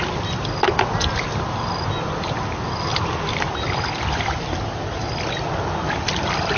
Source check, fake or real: real